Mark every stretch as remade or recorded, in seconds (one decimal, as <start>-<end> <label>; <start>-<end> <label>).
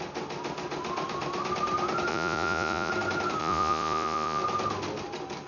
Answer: 0.0-2.1 recorded; 2.1-2.9 remade; 2.9-3.4 recorded; 3.4-4.4 remade; 4.4-5.5 recorded